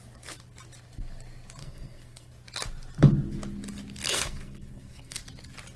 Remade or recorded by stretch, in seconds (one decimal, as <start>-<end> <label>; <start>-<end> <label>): 0.0-1.6 recorded; 1.6-2.3 remade; 2.3-4.1 recorded; 4.1-5.2 remade; 5.2-5.8 recorded